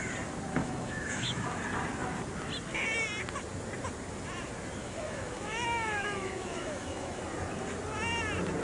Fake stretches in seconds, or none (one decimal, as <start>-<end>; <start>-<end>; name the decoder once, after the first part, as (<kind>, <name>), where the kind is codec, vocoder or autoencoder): 0.6-1.4 (autoencoder, DAC-VAE); 4.8-7.2